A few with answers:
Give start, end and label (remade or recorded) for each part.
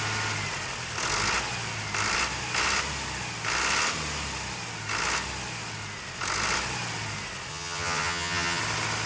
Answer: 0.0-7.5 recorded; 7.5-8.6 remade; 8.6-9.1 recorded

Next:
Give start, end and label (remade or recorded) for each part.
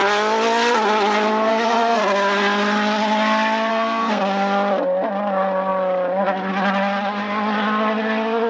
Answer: 0.0-1.5 recorded; 1.5-2.0 remade; 2.0-3.7 recorded; 3.7-4.2 remade; 4.2-8.5 recorded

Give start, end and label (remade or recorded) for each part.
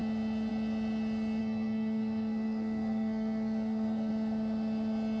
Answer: 0.0-1.4 recorded; 1.4-4.1 remade; 4.1-5.2 recorded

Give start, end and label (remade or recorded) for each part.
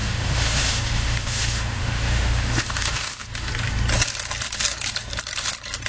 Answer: 0.0-3.5 remade; 3.5-5.9 recorded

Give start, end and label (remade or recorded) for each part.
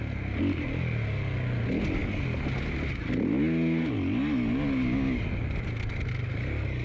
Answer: 0.0-6.8 recorded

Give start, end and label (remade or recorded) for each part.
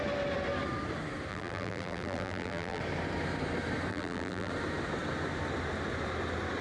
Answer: 0.0-1.3 recorded; 1.3-2.8 remade; 2.8-3.9 recorded; 3.9-4.5 remade; 4.5-6.6 recorded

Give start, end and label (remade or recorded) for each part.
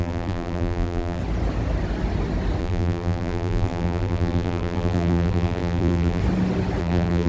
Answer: 0.0-1.2 remade; 1.2-2.6 recorded; 2.6-6.2 remade; 6.2-6.8 recorded; 6.8-7.3 remade